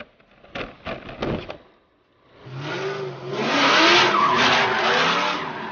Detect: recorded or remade recorded